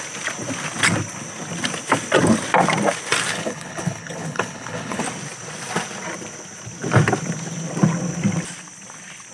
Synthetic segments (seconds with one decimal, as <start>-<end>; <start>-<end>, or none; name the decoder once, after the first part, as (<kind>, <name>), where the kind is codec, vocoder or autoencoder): 3.3-5.0 (codec, HILCodec)